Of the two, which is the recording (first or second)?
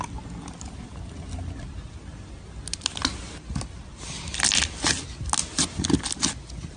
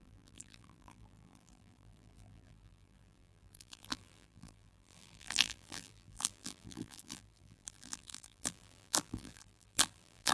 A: first